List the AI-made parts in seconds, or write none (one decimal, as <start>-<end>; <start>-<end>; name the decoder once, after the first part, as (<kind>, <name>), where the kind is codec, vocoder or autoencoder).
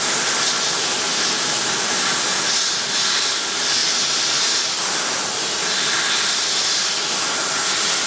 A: none